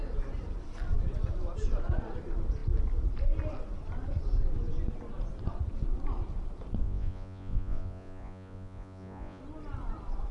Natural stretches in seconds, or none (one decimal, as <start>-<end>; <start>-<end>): 0.0-6.8; 9.4-10.3